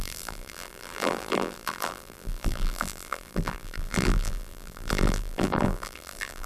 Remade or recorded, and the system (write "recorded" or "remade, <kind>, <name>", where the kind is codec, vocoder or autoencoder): remade, vocoder, BigVGAN v2